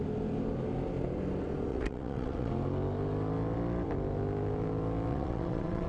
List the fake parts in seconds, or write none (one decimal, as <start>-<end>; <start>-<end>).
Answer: 1.7-2.5; 5.1-5.9